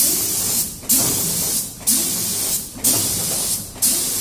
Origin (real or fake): real